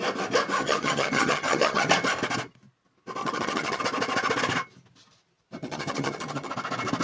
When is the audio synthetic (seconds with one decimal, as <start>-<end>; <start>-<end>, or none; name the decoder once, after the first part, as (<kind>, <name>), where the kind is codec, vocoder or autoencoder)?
0.6-1.9 (vocoder, HiFi-GAN); 3.2-3.8; 5.6-6.5